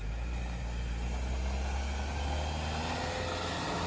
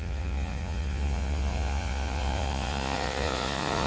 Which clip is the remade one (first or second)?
second